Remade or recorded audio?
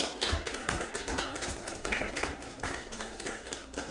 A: remade